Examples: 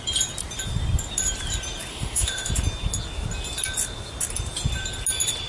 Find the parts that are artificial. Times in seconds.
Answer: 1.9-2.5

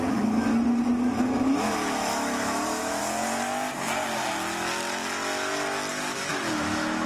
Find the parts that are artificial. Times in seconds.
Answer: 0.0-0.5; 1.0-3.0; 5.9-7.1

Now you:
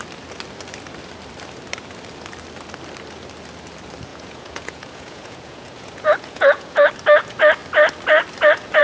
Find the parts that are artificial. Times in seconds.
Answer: 4.1-6.9

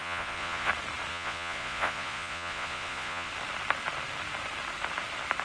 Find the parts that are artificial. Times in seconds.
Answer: 0.0-0.7; 1.1-3.3

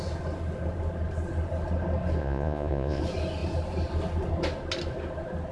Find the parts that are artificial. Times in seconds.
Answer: 2.2-3.0